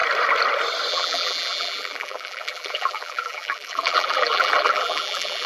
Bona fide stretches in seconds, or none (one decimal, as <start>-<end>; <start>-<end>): 0.0-0.9